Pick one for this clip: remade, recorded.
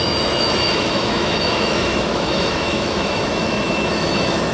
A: remade